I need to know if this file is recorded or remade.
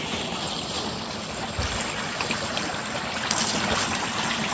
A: recorded